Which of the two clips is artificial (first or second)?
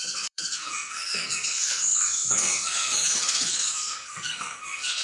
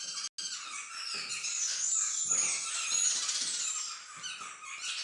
first